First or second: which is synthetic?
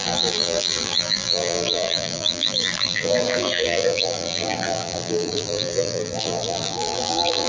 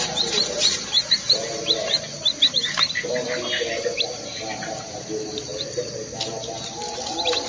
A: first